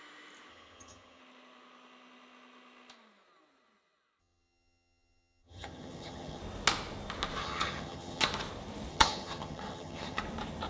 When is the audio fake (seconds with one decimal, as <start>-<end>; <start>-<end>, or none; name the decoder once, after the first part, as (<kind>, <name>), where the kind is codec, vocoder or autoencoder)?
0.5-1.2 (vocoder, HiFi-GAN); 4.2-6.4; 7.4-8.2; 8.9-10.2